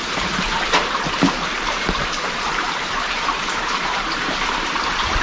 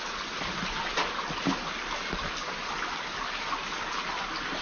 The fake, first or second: first